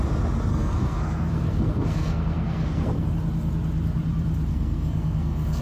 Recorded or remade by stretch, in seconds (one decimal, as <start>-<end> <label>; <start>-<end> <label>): 0.0-0.5 recorded; 0.5-3.1 remade; 3.1-4.5 recorded; 4.5-5.6 remade